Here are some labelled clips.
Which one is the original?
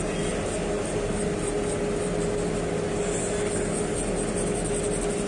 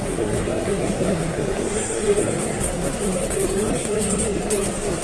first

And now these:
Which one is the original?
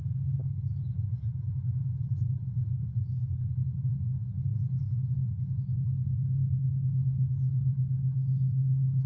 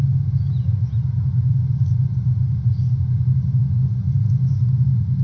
second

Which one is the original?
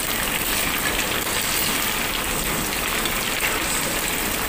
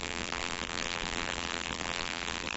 first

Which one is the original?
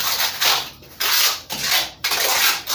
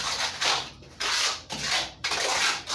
first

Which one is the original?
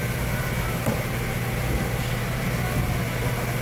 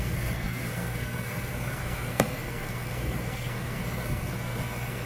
first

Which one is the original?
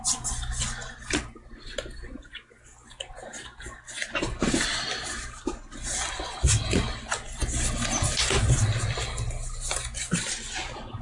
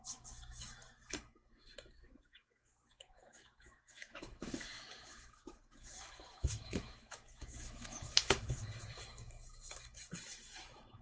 first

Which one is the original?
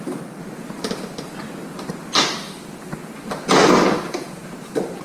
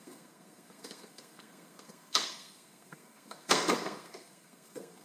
first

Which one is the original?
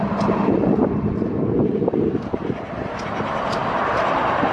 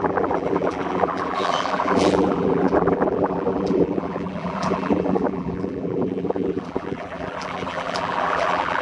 first